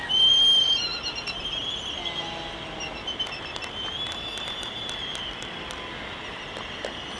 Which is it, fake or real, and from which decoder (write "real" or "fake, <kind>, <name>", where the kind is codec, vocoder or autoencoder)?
real